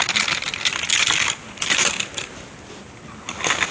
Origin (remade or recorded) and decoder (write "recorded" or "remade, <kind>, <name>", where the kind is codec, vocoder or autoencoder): recorded